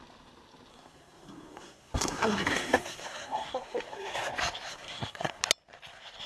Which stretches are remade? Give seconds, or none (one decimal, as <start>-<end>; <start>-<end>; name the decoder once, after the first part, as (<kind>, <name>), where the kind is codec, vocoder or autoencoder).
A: 0.7-4.3 (codec, SNAC); 4.7-5.4